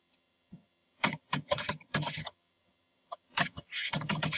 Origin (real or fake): fake